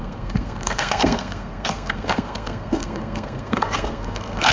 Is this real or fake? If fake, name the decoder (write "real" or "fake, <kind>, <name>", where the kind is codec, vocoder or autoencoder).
fake, codec, SNAC